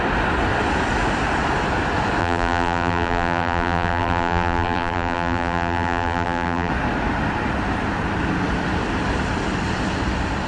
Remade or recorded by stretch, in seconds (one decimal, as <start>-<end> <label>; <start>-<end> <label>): 0.0-2.2 recorded; 2.2-6.7 remade; 6.7-10.5 recorded